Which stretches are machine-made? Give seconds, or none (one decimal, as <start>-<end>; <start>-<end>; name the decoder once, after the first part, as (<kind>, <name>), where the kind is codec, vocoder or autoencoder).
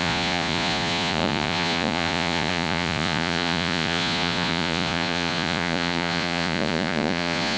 0.0-7.6 (vocoder, Vocos)